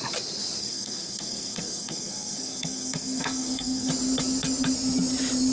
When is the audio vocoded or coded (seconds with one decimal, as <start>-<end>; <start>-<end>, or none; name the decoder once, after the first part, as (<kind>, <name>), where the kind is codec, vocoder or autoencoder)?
0.6-3.9 (codec, SNAC)